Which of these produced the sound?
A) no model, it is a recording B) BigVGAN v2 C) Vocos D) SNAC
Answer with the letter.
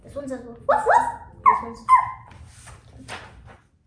A